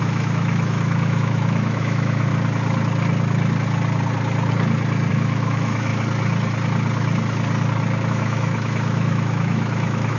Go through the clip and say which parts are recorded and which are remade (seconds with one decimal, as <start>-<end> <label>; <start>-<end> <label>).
0.0-2.3 remade; 2.3-5.1 recorded; 5.1-5.9 remade; 5.9-8.1 recorded; 8.1-10.2 remade

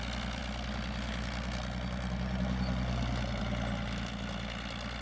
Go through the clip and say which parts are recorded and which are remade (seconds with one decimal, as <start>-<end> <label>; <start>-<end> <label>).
0.0-5.0 recorded

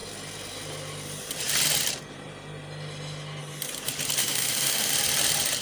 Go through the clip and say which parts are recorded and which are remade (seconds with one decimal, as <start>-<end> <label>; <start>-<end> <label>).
0.0-4.2 recorded; 4.2-4.9 remade; 4.9-5.6 recorded

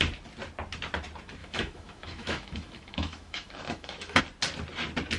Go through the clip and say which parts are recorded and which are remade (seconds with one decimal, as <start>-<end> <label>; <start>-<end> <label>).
0.0-1.4 recorded; 1.4-4.2 remade; 4.2-5.2 recorded

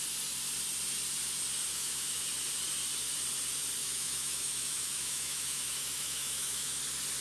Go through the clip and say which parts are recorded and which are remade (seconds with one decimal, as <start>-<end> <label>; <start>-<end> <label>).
0.0-1.7 recorded; 1.7-2.2 remade; 2.2-3.8 recorded; 3.8-6.8 remade; 6.8-7.2 recorded

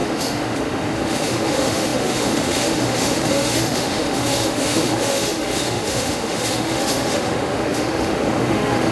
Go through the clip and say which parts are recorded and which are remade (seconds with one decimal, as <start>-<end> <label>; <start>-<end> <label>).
0.0-8.9 remade

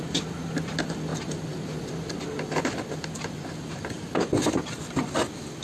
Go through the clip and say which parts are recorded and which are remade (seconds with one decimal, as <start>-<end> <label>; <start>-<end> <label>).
0.0-5.6 recorded

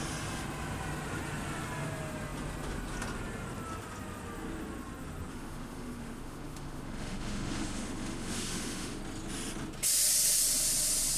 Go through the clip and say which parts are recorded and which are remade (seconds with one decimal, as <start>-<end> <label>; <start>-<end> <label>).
0.0-5.3 recorded; 5.3-9.0 remade; 9.0-11.2 recorded